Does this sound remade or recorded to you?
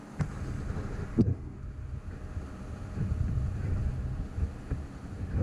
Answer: recorded